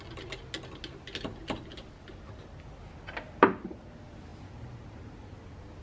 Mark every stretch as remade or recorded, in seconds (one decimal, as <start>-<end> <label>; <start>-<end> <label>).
0.0-4.3 recorded; 4.3-5.0 remade; 5.0-5.8 recorded